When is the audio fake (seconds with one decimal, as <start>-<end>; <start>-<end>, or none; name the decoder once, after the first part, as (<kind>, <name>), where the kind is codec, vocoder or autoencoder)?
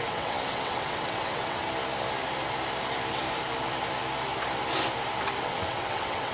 0.0-1.6 (vocoder, WaveNeXt); 5.4-6.3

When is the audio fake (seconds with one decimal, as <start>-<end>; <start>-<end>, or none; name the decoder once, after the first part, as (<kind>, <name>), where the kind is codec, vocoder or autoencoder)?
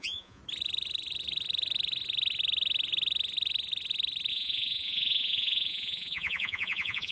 0.0-0.4 (vocoder, Vocos); 4.3-7.1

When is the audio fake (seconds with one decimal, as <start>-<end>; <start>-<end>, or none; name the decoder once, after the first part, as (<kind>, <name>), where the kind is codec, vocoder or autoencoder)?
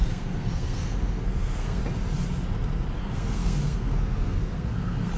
0.0-1.8 (codec, SNAC); 3.0-5.2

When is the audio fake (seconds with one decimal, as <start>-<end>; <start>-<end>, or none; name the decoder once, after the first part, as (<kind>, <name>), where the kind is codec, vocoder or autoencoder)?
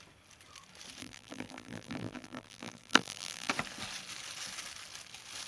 1.0-3.5 (vocoder, BigVGAN v2)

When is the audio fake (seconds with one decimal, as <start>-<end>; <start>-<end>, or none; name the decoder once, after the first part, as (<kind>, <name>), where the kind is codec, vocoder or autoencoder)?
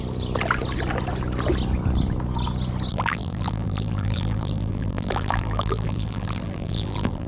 2.9-7.3 (vocoder, BigVGAN v2)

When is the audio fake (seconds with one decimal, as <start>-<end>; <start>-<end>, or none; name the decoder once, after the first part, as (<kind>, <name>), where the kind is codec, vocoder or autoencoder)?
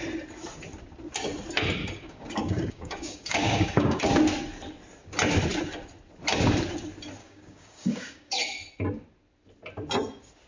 1.8-4.0 (codec, DAC); 7.2-8.3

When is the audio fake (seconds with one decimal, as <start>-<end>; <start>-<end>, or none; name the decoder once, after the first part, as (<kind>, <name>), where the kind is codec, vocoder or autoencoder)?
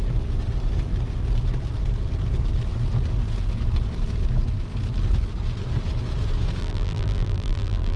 6.6-8.0 (vocoder, BigVGAN v2)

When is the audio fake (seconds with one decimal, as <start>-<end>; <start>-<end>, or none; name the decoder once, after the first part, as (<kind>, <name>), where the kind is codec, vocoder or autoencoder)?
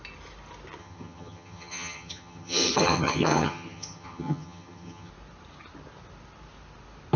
0.8-5.1 (vocoder, HiFi-GAN)